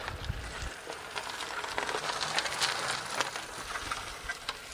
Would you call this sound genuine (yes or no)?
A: yes